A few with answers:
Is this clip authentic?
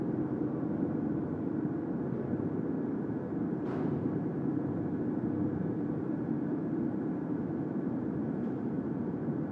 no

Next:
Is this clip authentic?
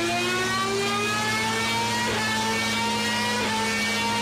yes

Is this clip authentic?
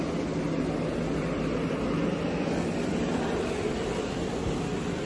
yes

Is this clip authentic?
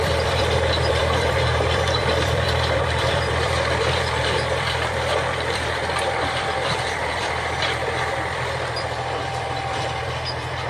no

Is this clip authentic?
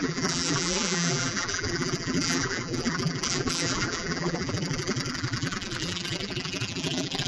no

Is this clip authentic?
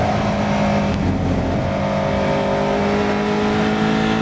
yes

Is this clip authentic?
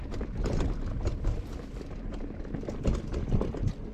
yes